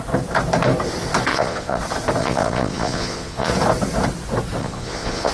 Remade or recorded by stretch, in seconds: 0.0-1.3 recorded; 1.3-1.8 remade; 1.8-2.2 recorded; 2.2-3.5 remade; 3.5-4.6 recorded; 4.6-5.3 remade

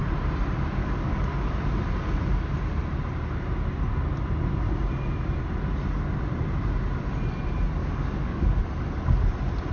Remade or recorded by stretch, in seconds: 0.0-0.8 recorded; 0.8-1.5 remade; 1.5-7.8 recorded; 7.8-8.6 remade; 8.6-9.7 recorded

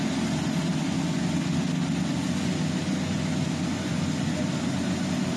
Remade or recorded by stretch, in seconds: 0.0-5.4 recorded

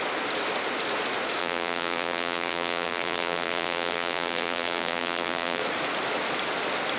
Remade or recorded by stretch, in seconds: 0.0-1.4 recorded; 1.4-5.6 remade; 5.6-7.0 recorded

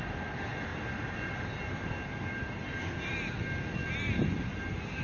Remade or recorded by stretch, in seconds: 0.0-5.0 recorded

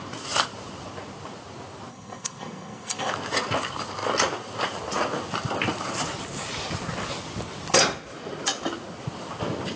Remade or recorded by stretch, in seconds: 0.0-1.9 recorded; 1.9-3.1 remade; 3.1-9.8 recorded

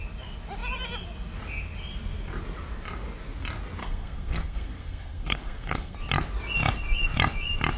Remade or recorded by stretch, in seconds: 0.0-3.8 recorded; 3.8-6.0 remade; 6.0-7.8 recorded

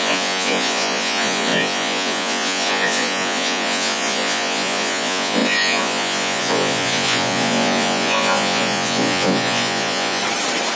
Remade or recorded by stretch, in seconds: 0.0-10.2 remade; 10.2-10.8 recorded